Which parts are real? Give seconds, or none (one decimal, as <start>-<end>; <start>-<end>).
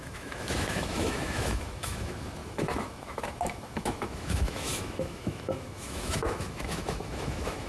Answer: none